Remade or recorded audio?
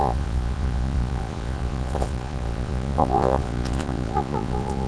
remade